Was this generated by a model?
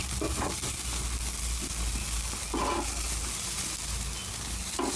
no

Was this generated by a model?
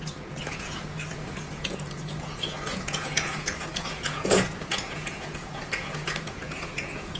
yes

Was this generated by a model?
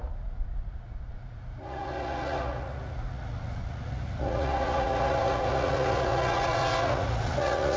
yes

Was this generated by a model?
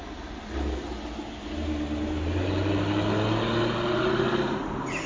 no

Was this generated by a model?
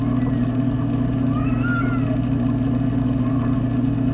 no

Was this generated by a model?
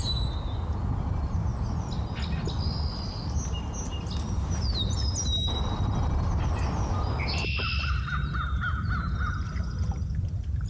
no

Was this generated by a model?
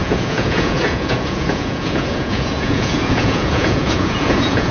yes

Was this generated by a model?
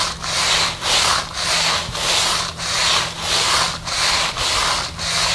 no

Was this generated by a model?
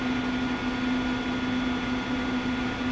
no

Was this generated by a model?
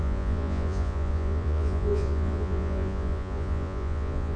yes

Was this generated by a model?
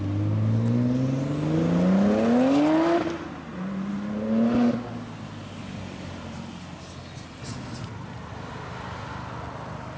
no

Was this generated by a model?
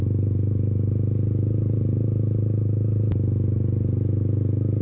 no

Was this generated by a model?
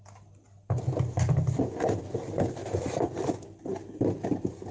no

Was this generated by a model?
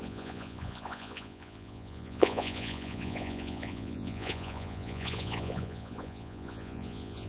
yes